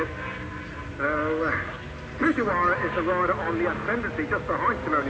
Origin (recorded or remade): recorded